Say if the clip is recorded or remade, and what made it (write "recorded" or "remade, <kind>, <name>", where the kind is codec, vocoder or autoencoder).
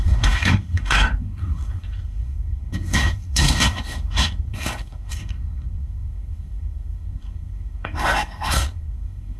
remade, codec, SNAC